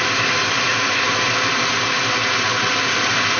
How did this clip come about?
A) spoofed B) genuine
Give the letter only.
B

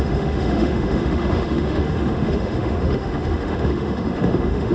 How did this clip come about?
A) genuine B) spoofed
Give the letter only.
B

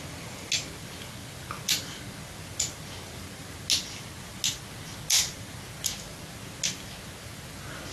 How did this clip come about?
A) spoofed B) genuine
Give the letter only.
B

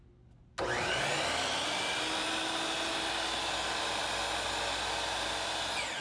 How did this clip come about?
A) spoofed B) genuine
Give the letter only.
B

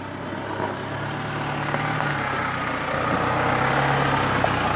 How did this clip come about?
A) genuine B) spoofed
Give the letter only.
A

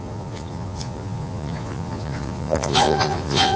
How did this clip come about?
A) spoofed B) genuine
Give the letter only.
A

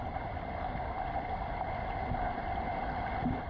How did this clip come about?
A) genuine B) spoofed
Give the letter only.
A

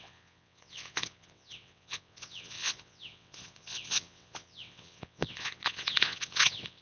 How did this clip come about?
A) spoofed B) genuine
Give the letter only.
A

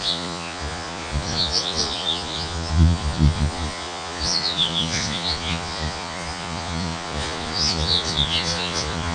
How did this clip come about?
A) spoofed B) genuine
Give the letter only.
A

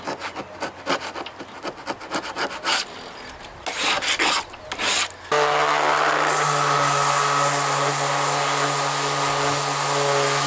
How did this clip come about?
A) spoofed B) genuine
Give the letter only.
B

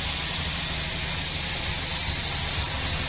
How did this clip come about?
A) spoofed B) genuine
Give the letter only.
B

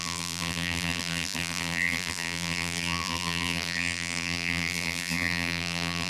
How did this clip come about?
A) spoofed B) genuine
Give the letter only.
A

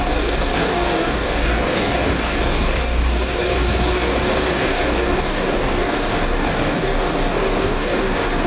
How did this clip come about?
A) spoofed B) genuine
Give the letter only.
A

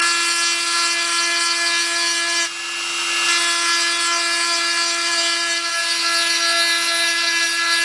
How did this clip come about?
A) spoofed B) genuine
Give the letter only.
B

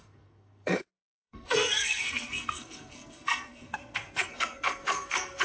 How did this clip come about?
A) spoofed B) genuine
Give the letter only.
A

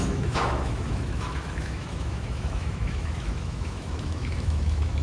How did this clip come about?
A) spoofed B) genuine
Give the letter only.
A